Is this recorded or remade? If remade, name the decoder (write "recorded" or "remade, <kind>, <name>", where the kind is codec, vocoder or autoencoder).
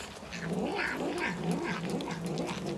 recorded